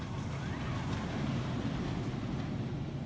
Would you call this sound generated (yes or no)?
no